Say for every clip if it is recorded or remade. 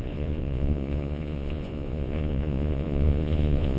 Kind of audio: remade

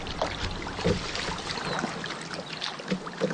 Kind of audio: recorded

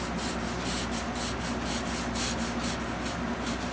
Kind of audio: recorded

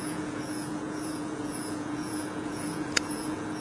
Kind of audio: remade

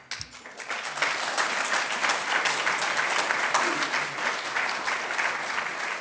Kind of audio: recorded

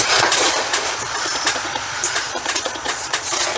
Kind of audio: remade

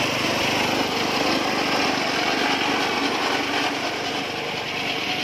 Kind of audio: recorded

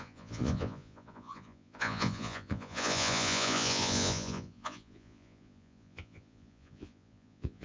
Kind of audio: remade